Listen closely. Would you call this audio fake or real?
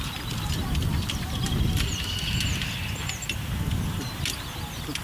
real